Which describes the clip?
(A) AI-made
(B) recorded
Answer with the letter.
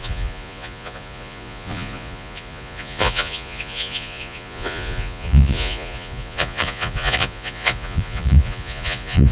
A